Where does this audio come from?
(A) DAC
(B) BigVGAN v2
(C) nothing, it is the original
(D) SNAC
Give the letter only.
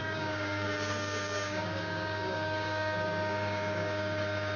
A